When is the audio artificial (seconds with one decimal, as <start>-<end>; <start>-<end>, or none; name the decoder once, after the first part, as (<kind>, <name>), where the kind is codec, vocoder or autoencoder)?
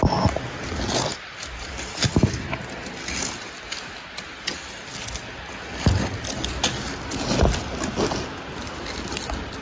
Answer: none